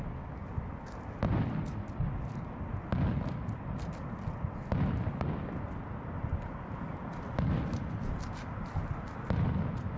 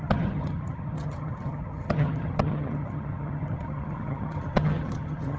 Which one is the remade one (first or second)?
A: second